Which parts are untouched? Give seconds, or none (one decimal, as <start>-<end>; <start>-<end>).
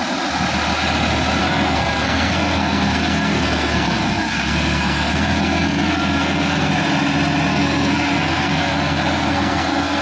0.0-1.4; 6.7-7.5